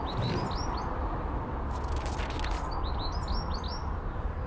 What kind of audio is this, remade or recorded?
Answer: recorded